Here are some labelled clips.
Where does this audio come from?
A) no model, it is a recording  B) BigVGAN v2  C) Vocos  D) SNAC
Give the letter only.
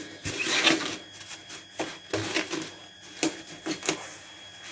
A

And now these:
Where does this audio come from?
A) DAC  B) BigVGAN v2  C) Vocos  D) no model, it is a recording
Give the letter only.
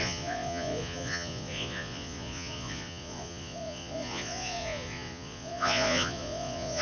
C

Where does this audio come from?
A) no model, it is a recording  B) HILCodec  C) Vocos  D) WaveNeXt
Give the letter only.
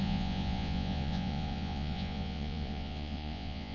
C